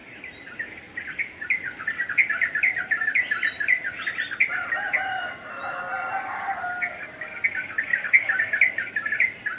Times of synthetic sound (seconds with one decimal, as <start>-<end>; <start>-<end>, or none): 7.9-8.4